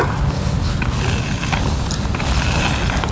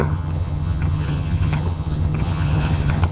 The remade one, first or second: second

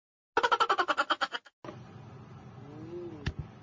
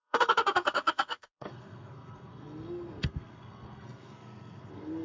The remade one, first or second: second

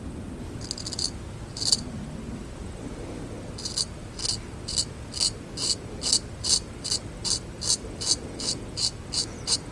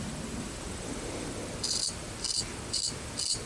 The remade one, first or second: second